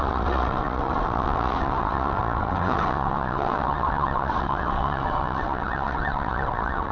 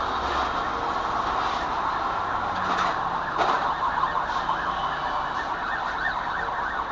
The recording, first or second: second